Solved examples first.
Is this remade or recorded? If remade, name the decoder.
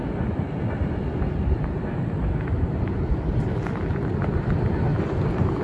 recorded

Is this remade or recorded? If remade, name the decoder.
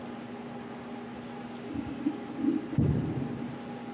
recorded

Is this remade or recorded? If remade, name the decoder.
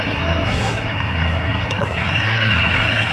remade, codec, SNAC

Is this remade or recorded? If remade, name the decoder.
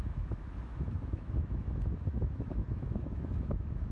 remade, autoencoder, DAC-VAE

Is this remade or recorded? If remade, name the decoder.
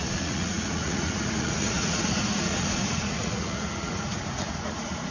remade, vocoder, Vocos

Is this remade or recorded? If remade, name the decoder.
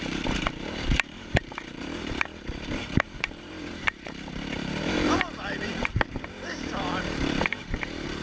remade, vocoder, BigVGAN v2